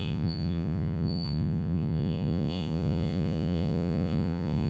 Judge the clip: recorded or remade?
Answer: remade